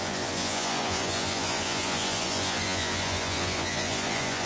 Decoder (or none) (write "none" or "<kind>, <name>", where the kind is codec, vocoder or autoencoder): vocoder, Vocos